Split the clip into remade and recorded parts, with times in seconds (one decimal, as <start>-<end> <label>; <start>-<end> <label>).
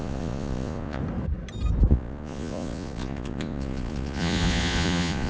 0.0-1.0 remade; 1.0-1.9 recorded; 1.9-5.3 remade